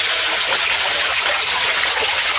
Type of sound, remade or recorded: remade